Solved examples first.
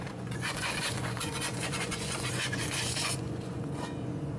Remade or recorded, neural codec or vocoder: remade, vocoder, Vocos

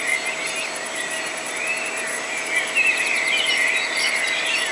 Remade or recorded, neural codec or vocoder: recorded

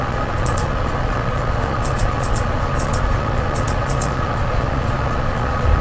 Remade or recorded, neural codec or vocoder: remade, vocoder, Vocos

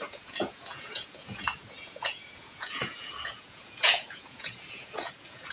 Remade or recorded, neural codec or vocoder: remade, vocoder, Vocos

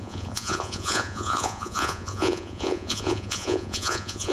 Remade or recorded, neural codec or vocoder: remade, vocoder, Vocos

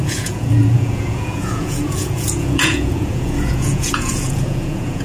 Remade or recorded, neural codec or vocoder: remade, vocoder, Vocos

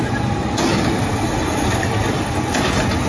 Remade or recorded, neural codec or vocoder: recorded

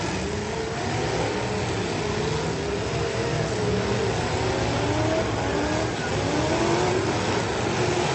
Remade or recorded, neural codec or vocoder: recorded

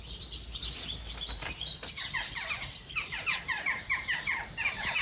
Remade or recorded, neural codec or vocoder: recorded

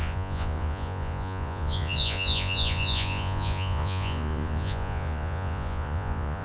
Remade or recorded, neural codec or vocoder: remade, vocoder, Vocos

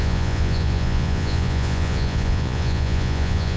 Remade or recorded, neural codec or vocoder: remade, vocoder, Vocos